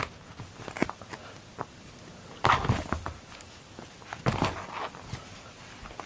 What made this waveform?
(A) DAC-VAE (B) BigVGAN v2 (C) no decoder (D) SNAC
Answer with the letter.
C